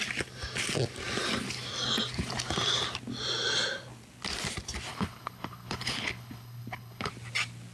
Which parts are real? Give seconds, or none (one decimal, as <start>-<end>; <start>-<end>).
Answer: 0.0-4.9; 7.1-7.7